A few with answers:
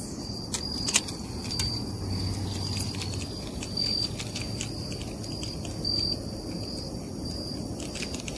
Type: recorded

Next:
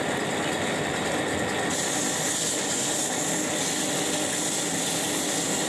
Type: recorded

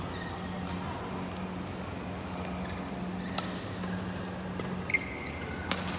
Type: recorded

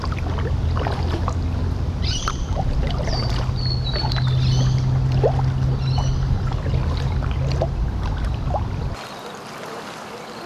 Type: recorded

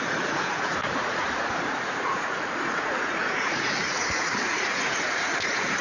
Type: remade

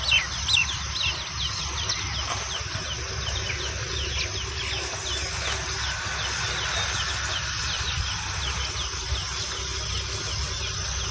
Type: recorded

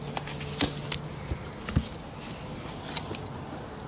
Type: recorded